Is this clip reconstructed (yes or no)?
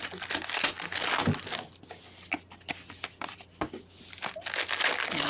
no